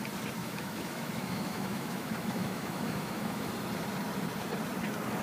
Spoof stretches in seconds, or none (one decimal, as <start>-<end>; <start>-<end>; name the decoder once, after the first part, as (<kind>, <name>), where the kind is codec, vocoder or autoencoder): 0.4-3.5 (autoencoder, DAC-VAE)